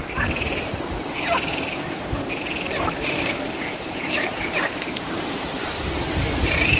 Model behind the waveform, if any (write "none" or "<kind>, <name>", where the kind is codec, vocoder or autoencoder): vocoder, BigVGAN v2